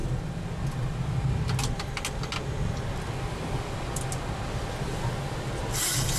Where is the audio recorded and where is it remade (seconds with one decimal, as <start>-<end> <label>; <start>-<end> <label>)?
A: 0.0-6.2 recorded